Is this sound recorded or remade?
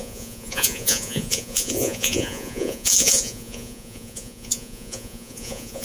remade